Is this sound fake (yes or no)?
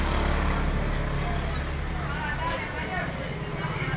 no